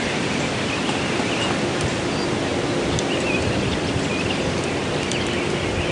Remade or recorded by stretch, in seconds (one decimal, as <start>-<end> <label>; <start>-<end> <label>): 0.0-5.9 recorded